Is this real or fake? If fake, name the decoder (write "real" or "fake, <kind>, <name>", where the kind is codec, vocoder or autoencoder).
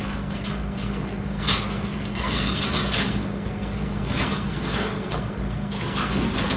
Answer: fake, codec, SNAC